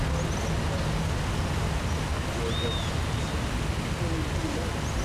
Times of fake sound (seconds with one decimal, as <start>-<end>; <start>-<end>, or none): none

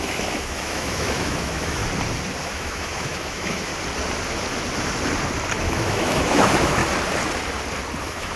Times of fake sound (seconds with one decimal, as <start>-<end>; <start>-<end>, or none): 0.0-1.8; 2.4-3.7; 5.6-6.8; 8.0-8.4

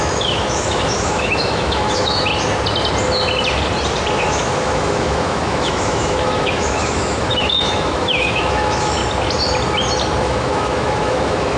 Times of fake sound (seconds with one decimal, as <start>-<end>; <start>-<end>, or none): 0.0-2.3; 4.2-9.0; 10.2-11.6